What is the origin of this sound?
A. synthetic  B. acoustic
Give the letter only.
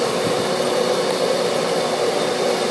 B